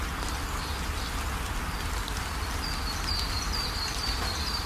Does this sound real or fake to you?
real